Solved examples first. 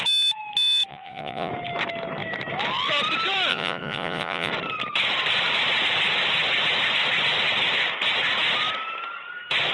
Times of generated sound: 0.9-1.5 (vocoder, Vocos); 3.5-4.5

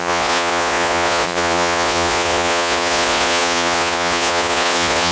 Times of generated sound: 0.0-5.1 (vocoder, Vocos)

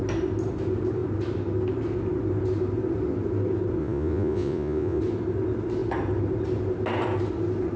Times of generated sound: 3.8-5.0 (vocoder, Vocos)

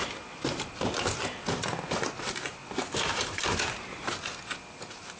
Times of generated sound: none

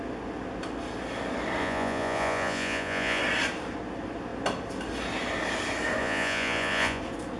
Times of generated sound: 1.6-3.2 (vocoder, Vocos); 6.0-7.0

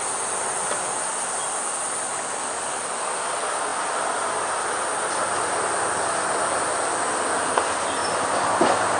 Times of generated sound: none

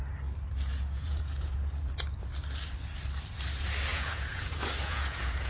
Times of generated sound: 0.7-1.9 (vocoder, Vocos); 3.9-5.5